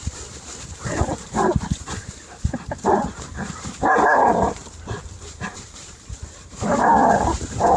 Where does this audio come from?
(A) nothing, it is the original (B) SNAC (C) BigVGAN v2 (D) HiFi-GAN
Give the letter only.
C